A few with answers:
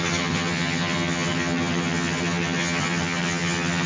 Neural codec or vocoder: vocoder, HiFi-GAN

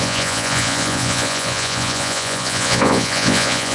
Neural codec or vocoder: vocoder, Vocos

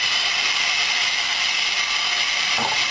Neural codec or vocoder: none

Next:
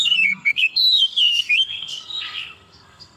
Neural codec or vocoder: codec, SNAC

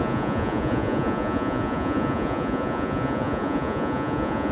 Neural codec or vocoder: vocoder, Vocos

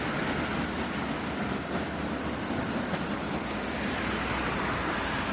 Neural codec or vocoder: none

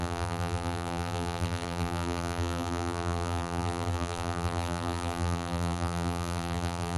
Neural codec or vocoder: vocoder, BigVGAN v2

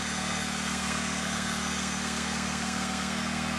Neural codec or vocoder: codec, SNAC